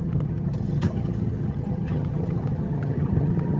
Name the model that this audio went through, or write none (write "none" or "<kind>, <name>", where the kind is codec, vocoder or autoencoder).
vocoder, HiFi-GAN